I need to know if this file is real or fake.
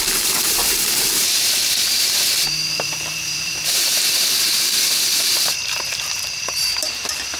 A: fake